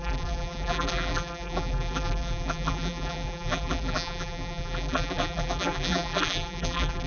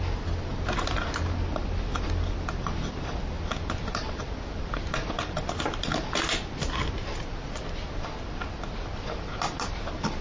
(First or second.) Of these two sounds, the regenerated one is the first